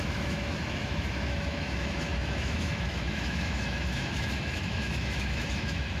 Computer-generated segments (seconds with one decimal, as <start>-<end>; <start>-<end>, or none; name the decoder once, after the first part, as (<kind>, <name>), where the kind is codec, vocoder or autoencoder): 0.0-6.0 (autoencoder, DAC-VAE)